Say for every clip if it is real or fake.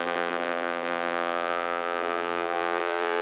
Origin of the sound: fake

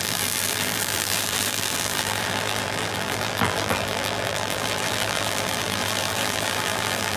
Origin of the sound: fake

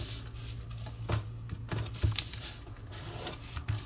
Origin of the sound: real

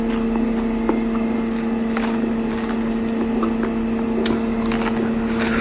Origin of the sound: real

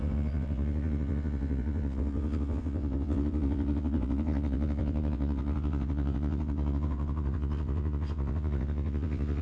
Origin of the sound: fake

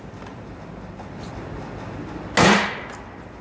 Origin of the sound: real